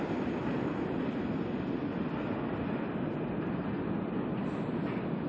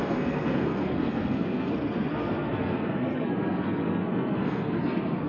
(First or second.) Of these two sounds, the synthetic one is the second